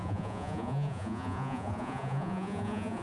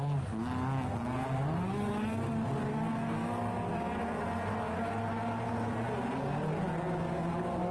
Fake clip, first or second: first